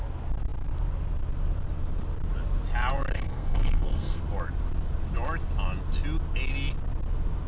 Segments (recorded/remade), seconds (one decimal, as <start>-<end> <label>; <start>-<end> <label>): 0.0-3.1 recorded; 3.1-4.2 remade; 4.2-7.5 recorded